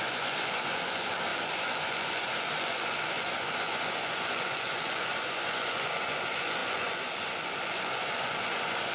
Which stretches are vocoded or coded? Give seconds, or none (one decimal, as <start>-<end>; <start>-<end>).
0.0-8.9